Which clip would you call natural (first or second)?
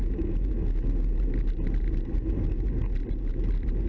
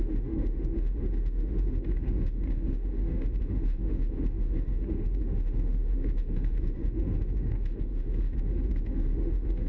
first